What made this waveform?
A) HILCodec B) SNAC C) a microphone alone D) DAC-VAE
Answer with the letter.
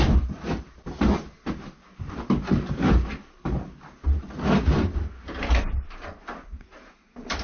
C